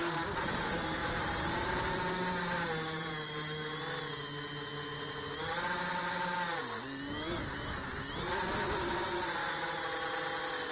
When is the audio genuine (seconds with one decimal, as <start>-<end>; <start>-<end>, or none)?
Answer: 0.0-10.7